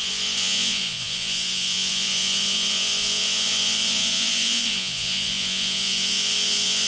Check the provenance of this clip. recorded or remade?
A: remade